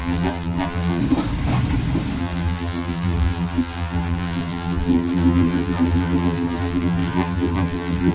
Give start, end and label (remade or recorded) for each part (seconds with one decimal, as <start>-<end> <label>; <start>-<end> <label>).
0.0-1.0 remade; 1.0-2.2 recorded; 2.2-8.1 remade